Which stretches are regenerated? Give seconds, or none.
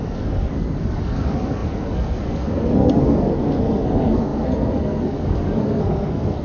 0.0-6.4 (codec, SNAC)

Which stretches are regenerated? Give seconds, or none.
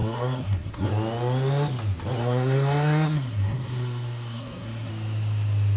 0.0-0.9 (codec, SNAC); 2.2-4.9